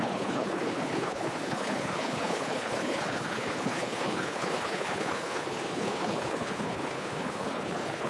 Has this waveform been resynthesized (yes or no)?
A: yes